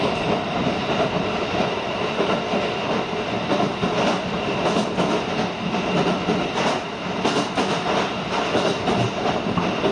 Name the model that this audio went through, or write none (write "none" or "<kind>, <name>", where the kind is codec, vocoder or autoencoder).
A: none